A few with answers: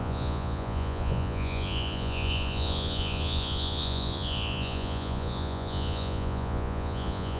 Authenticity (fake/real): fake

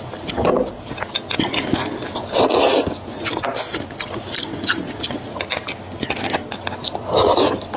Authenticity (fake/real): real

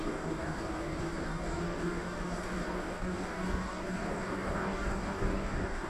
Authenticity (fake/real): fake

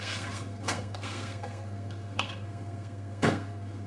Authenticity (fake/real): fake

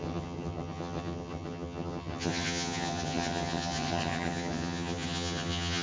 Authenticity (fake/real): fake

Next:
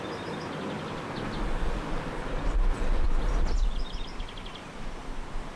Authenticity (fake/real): real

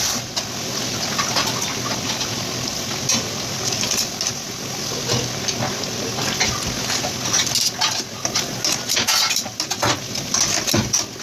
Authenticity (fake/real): real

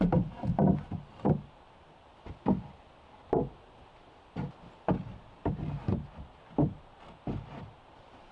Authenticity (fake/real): real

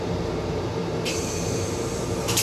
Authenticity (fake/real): fake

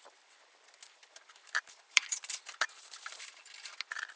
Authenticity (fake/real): fake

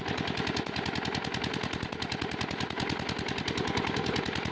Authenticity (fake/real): real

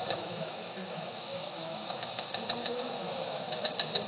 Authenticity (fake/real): fake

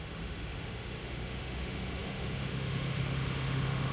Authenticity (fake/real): fake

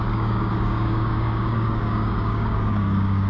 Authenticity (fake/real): fake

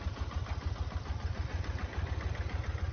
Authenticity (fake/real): real